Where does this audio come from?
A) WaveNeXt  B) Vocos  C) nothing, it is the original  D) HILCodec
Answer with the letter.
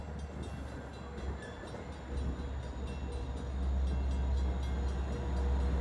C